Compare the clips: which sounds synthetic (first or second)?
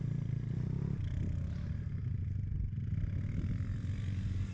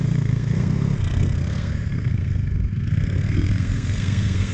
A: second